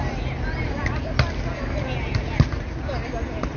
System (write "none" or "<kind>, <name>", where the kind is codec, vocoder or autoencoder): none